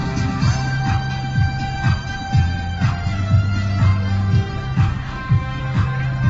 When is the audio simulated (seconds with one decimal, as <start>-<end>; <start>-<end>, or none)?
4.9-5.6